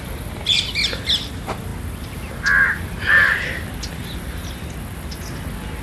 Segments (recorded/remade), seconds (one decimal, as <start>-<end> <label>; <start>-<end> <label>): 0.0-5.8 recorded